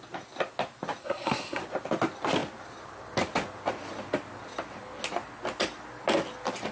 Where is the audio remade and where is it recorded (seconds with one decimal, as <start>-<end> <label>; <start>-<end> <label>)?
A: 0.0-1.0 recorded; 1.0-1.6 remade; 1.6-6.7 recorded